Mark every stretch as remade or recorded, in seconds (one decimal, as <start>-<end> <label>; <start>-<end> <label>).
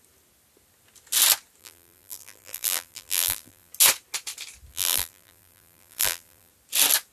0.0-1.6 recorded; 1.6-3.7 remade; 3.7-4.7 recorded; 4.7-6.5 remade; 6.5-7.1 recorded